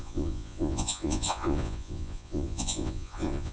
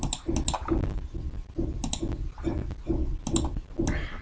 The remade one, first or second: first